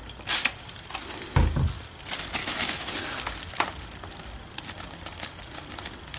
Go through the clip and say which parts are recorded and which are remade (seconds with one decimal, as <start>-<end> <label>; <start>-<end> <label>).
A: 0.0-2.4 recorded; 2.4-2.9 remade; 2.9-6.2 recorded

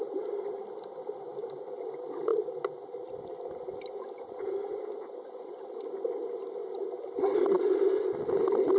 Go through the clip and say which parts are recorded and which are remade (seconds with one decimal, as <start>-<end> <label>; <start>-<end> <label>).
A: 0.0-2.3 recorded; 2.3-3.6 remade; 3.6-8.8 recorded